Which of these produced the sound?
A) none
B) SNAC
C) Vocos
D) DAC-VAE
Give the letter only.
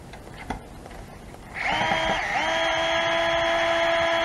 A